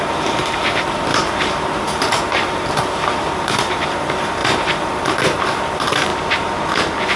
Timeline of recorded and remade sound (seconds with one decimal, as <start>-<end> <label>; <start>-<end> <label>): 0.0-6.1 remade; 6.1-7.2 recorded